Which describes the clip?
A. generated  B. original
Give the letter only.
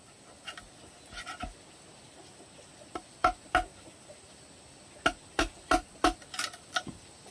B